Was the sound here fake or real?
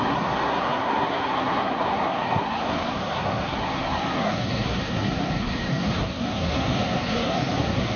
fake